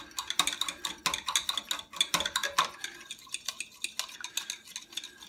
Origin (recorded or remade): recorded